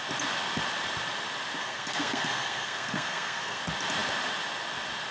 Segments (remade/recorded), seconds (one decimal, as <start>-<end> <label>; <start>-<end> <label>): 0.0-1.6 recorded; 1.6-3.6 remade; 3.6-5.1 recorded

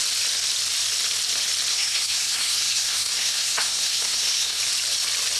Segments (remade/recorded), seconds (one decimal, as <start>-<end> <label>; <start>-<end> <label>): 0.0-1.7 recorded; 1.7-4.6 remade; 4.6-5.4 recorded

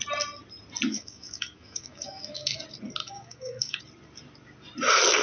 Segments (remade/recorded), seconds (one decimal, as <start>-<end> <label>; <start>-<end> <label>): 0.0-0.9 recorded; 0.9-2.6 remade; 2.6-3.0 recorded; 3.0-3.8 remade; 3.8-5.2 recorded

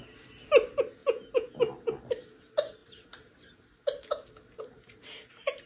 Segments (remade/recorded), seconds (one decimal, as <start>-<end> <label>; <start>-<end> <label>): 0.0-1.0 recorded; 1.0-1.6 remade; 1.6-5.7 recorded

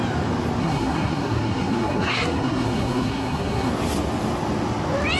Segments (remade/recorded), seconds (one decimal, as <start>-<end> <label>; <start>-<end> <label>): 0.0-0.6 recorded; 0.6-3.7 remade; 3.7-5.2 recorded

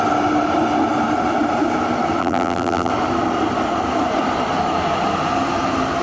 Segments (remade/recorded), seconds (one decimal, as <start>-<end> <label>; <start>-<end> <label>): 0.0-2.2 recorded; 2.2-2.9 remade; 2.9-6.0 recorded

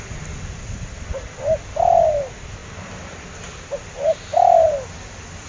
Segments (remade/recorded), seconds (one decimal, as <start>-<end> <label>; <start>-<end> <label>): 0.0-2.6 recorded; 2.6-3.7 remade; 3.7-5.5 recorded